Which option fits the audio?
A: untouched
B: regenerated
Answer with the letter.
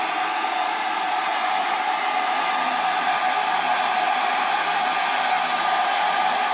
A